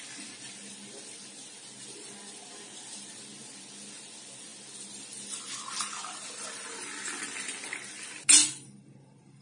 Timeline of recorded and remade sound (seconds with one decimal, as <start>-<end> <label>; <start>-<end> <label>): 0.0-9.4 recorded